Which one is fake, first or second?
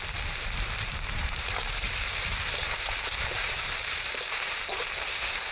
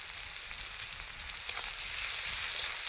first